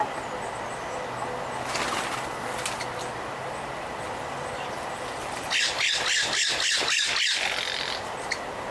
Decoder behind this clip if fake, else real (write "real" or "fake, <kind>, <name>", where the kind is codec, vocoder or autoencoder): real